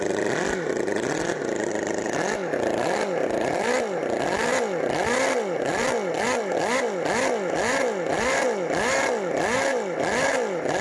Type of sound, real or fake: real